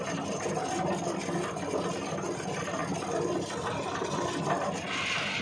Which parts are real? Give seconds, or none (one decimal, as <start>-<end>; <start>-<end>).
0.0-5.4